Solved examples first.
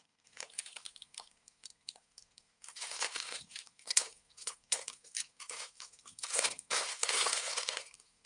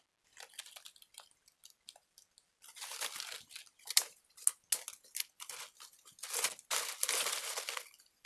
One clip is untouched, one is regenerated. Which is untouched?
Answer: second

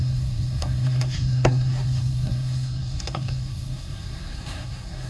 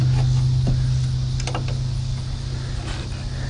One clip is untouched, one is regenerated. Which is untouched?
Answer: second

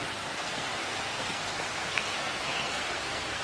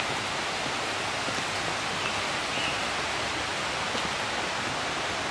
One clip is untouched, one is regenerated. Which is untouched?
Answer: second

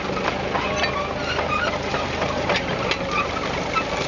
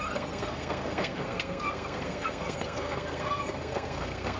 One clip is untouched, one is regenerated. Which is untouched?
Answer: first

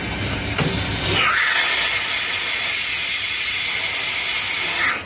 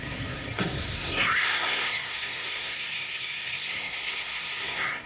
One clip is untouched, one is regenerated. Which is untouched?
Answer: first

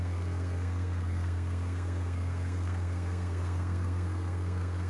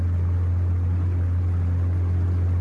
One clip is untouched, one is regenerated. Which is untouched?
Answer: second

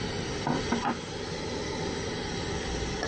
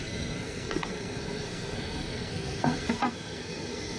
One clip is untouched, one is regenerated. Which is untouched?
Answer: first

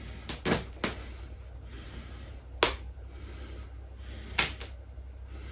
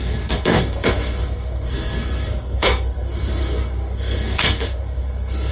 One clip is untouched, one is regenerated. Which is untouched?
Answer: first